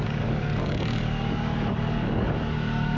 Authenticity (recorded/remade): remade